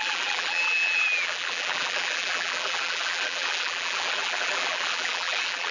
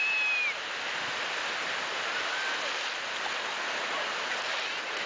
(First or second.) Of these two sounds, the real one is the second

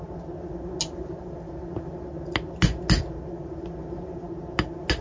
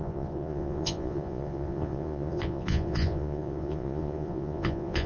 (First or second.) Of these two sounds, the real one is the first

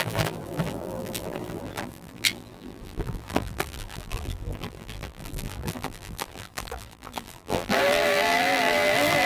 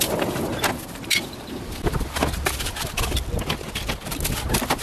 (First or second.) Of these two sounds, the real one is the second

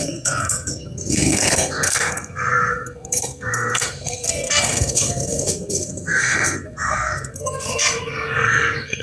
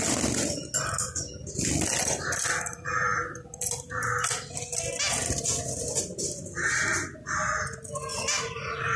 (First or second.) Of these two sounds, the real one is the second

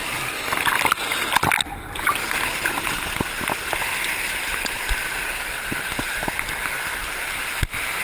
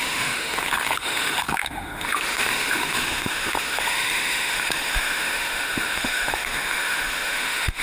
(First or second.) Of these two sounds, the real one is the first